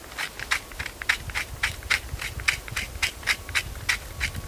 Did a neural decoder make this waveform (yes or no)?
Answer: no